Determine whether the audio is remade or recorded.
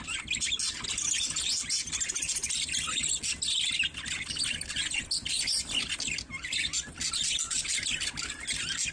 recorded